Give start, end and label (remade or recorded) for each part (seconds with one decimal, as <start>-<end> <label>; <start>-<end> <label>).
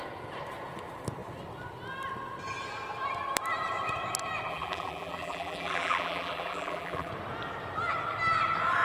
0.0-4.5 recorded; 4.5-7.1 remade; 7.1-8.8 recorded